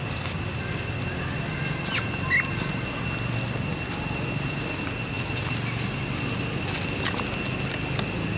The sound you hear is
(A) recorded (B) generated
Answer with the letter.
A